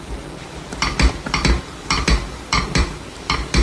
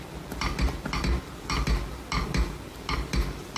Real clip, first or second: second